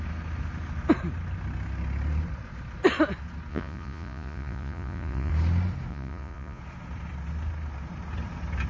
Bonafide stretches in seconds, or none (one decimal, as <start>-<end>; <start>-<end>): 0.0-3.5; 5.3-5.9; 6.6-8.7